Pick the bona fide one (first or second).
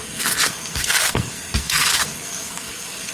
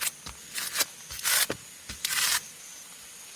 second